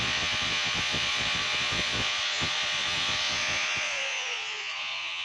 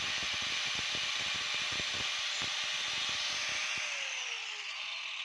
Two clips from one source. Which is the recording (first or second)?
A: second